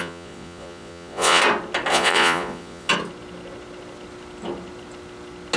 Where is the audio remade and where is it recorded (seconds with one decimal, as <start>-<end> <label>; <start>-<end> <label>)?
0.0-1.4 remade; 1.4-1.9 recorded; 1.9-2.9 remade; 2.9-5.6 recorded